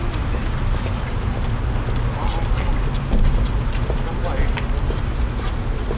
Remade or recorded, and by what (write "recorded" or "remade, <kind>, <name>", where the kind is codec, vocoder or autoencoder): recorded